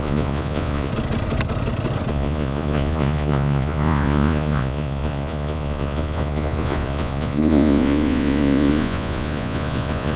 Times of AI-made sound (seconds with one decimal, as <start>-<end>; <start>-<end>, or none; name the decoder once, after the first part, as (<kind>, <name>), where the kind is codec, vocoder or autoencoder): 0.0-0.9 (vocoder, Vocos); 2.1-10.2